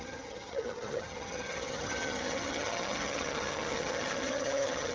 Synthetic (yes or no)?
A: yes